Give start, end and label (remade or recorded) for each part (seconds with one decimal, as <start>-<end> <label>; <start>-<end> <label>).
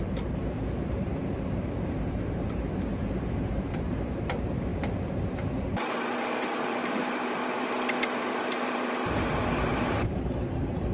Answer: 0.0-7.4 remade; 7.4-8.5 recorded; 8.5-10.9 remade